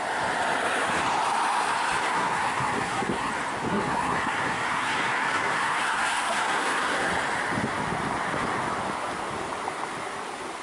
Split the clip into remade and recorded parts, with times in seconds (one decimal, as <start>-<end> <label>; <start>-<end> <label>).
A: 0.0-2.0 recorded; 2.0-3.3 remade; 3.3-3.7 recorded; 3.7-7.1 remade; 7.1-10.6 recorded